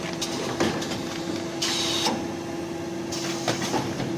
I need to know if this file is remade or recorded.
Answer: recorded